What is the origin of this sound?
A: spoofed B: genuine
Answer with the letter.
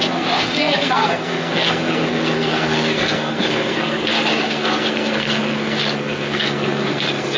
A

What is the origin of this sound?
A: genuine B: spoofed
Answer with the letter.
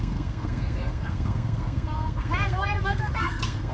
B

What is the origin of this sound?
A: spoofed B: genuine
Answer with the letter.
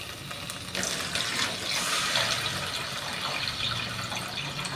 B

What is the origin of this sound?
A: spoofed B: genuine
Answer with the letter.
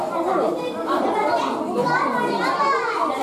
B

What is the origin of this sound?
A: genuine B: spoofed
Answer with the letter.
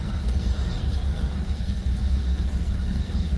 B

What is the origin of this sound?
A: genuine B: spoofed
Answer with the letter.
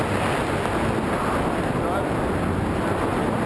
A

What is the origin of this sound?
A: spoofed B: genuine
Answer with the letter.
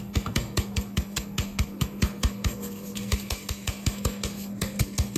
A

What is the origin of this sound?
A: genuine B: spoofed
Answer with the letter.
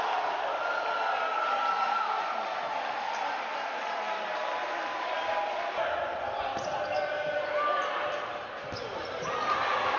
A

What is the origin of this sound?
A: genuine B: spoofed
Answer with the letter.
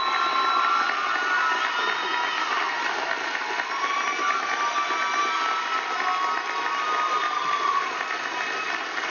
A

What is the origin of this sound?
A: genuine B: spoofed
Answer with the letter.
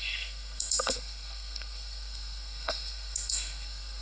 B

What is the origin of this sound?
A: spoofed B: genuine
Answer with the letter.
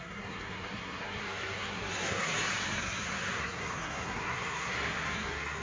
A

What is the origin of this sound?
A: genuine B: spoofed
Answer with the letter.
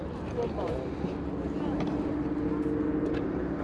A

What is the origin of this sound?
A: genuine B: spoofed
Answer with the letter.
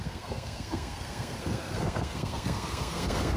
B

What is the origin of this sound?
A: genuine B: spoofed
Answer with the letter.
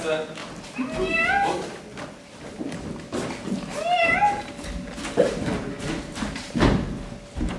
A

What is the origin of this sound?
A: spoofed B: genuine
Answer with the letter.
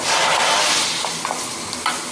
B